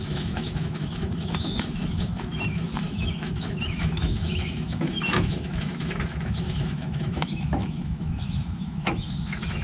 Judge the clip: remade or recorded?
remade